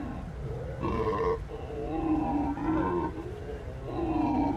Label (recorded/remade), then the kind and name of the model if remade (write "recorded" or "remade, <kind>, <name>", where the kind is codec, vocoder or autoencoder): recorded